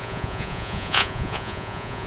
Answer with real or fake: fake